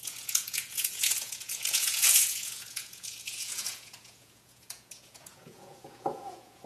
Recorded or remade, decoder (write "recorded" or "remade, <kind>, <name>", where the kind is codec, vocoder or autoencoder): remade, vocoder, Vocos